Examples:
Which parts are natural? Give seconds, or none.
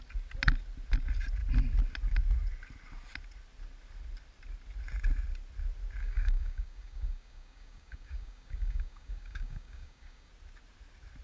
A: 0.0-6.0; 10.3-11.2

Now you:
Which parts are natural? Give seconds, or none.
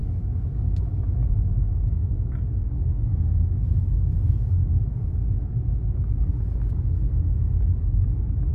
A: none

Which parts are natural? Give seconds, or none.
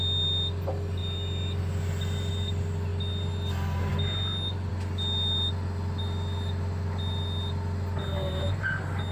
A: 0.0-9.1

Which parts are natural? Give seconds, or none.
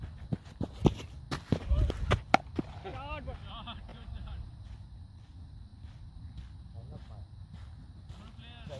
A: 0.0-3.9; 4.7-6.8; 7.7-8.8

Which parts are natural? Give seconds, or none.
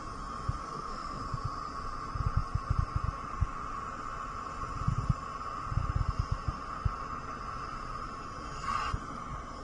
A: 0.0-0.6; 1.2-9.6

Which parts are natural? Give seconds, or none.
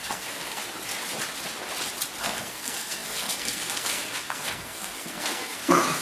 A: 0.6-2.2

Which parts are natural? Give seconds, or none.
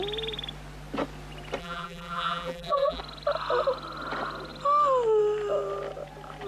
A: 0.0-1.6; 3.0-6.5